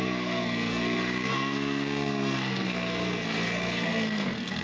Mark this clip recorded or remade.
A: remade